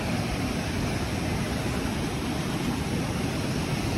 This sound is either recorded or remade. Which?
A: recorded